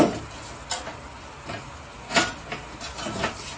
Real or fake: real